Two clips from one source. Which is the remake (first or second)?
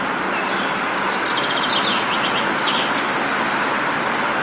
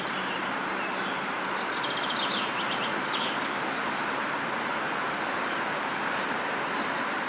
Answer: second